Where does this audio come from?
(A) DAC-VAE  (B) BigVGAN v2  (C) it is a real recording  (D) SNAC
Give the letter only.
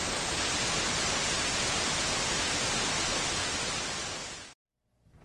C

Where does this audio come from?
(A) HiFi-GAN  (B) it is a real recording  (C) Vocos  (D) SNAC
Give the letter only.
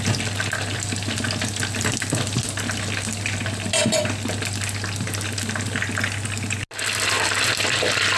B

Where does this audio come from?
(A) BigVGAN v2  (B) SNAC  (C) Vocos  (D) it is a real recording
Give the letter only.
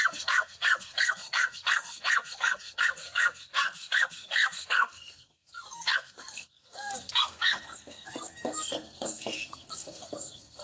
B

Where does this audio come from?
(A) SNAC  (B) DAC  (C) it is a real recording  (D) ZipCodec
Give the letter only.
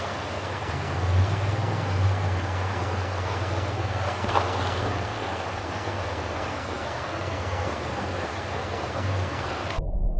A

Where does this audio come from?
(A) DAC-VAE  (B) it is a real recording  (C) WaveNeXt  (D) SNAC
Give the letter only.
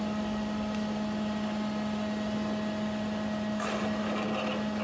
B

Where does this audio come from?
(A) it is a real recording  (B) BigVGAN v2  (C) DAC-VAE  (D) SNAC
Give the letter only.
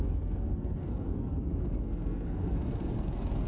D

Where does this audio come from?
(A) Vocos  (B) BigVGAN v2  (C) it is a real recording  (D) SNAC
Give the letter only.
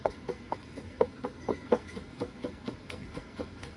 D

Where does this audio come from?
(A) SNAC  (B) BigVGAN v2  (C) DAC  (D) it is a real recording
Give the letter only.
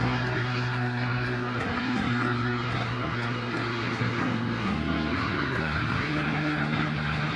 A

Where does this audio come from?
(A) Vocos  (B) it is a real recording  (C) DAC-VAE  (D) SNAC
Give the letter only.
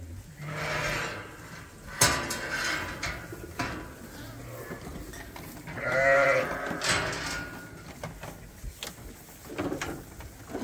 B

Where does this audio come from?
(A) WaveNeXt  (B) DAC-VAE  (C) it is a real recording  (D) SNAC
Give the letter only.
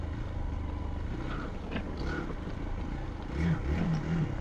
C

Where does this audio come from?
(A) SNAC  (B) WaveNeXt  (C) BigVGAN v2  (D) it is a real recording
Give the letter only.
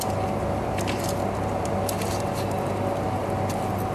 D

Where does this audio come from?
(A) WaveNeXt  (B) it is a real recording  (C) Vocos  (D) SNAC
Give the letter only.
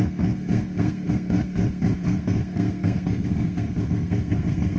D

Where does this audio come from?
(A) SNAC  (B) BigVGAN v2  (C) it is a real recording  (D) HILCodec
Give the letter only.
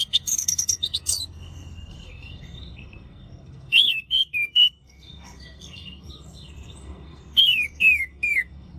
A